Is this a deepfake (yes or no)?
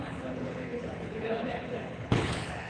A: yes